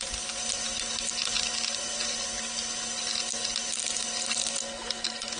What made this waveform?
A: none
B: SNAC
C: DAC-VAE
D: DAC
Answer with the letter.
A